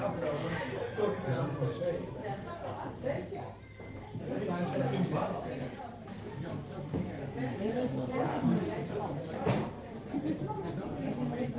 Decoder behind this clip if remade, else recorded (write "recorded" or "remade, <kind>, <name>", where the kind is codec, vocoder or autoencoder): remade, vocoder, BigVGAN v2